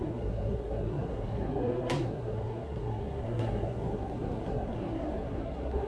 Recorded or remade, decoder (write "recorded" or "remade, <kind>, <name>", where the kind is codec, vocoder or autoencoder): remade, codec, SNAC